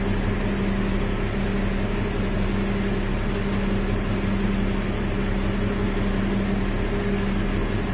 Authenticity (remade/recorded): recorded